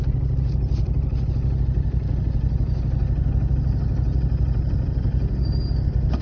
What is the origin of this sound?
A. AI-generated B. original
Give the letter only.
B